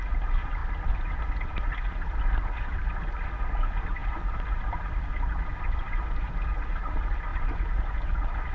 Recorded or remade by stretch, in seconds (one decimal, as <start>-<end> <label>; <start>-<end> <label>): 0.0-8.5 recorded